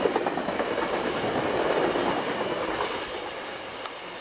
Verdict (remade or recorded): remade